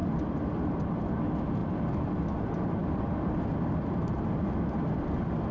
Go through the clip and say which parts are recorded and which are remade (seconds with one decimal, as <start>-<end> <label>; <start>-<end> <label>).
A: 0.0-0.5 remade; 0.5-5.5 recorded